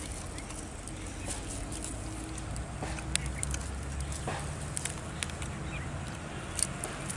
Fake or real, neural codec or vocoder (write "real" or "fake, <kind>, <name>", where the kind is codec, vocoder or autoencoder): real